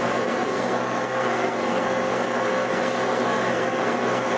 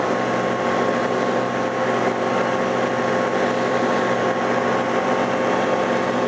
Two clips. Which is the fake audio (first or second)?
first